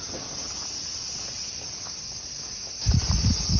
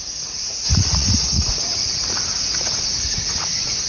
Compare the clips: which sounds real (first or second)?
first